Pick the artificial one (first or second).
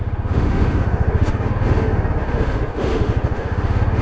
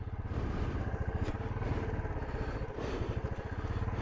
first